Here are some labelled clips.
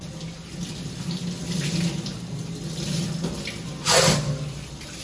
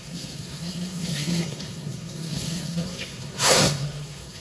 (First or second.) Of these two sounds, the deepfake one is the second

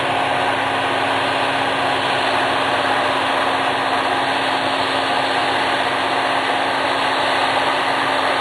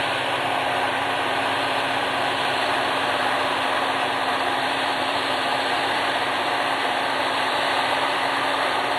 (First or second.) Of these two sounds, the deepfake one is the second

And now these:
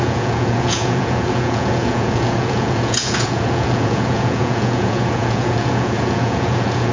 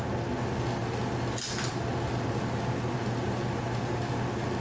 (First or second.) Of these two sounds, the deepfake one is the first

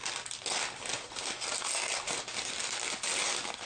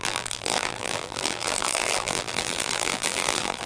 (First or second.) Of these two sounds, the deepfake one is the second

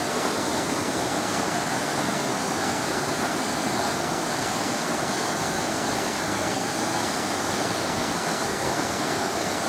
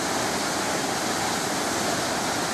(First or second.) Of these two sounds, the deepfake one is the first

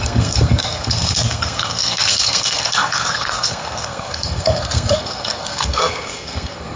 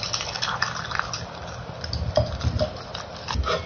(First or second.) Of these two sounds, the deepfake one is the first